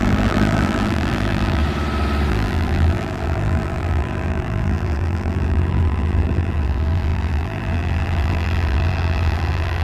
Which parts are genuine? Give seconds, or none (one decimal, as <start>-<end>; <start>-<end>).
1.6-2.3